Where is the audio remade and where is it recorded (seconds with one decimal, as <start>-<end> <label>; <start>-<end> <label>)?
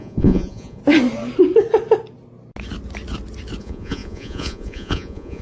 0.0-0.8 remade; 0.8-3.6 recorded; 3.6-5.4 remade